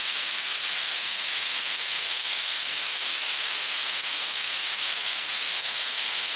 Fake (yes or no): yes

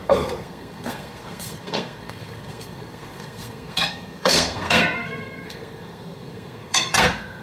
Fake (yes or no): yes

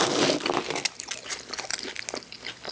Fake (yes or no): no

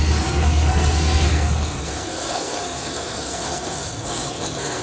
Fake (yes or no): yes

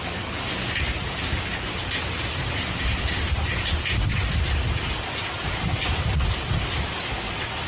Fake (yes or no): no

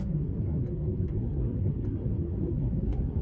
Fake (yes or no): yes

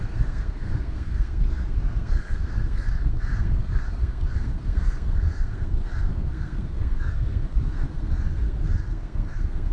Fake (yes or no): yes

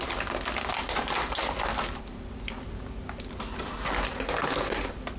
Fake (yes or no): no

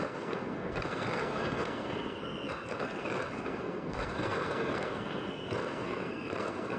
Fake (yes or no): yes